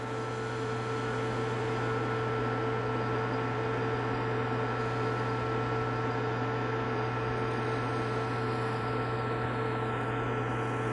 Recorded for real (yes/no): yes